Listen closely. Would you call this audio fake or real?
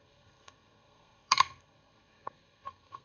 fake